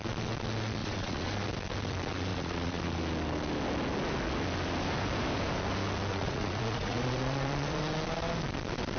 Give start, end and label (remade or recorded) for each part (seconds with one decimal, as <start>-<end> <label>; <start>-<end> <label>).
0.0-0.8 recorded; 0.8-1.3 remade; 1.3-2.3 recorded; 2.3-2.8 remade; 2.8-6.1 recorded; 6.1-7.8 remade; 7.8-9.0 recorded

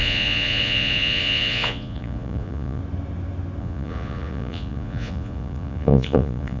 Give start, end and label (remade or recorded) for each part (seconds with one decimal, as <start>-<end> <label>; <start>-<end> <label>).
0.0-2.8 remade; 2.8-3.6 recorded; 3.6-6.6 remade

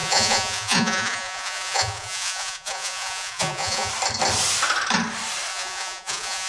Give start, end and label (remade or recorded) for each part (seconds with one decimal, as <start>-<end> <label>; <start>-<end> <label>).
0.0-3.9 remade; 3.9-5.5 recorded; 5.5-6.5 remade

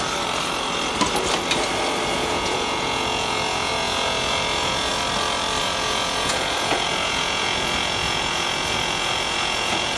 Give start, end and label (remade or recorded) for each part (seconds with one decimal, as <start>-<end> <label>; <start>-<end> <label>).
0.0-2.1 recorded; 2.1-4.9 remade; 4.9-5.6 recorded; 5.6-10.0 remade

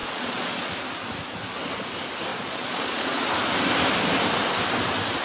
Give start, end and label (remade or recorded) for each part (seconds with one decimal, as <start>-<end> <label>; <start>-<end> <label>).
0.0-0.7 remade; 0.7-2.3 recorded; 2.3-3.3 remade; 3.3-5.2 recorded